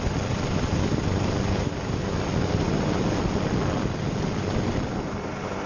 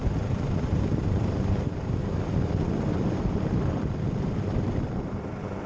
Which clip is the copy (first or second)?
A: second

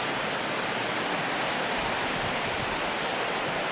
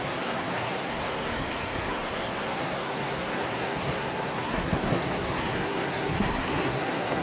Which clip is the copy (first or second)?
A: second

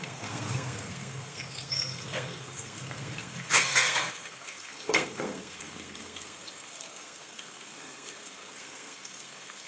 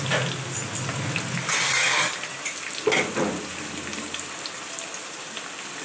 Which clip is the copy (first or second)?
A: first